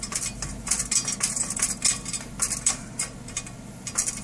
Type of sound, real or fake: real